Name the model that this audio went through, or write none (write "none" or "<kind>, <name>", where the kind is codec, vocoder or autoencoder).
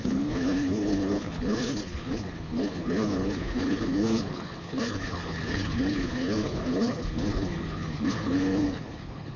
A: codec, HILCodec